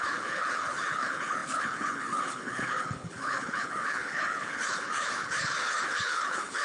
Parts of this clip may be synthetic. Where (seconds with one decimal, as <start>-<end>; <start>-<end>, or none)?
0.0-6.6